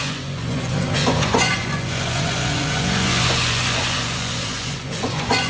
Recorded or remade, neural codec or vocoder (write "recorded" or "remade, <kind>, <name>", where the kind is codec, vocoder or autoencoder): remade, vocoder, Vocos